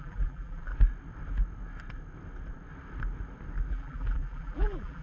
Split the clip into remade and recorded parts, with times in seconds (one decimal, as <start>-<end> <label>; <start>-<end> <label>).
0.0-0.7 remade; 0.7-3.7 recorded; 3.7-5.0 remade